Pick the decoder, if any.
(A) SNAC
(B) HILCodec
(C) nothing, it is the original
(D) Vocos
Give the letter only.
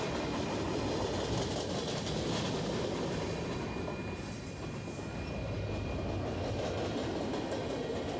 C